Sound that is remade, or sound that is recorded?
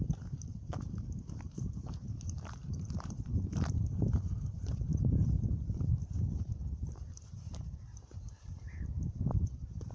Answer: remade